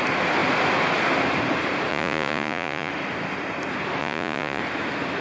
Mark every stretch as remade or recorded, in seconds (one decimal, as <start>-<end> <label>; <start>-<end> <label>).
0.0-1.9 recorded; 1.9-2.9 remade; 2.9-4.0 recorded; 4.0-4.6 remade; 4.6-5.2 recorded